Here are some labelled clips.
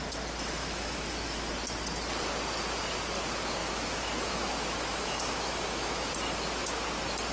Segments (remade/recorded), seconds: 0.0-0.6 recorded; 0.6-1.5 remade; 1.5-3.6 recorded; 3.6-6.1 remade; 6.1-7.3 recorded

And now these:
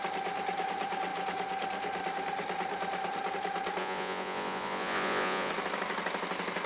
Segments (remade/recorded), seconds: 0.0-3.8 recorded; 3.8-5.5 remade; 5.5-6.7 recorded

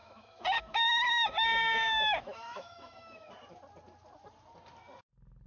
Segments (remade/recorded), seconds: 0.0-3.3 remade; 3.3-5.5 recorded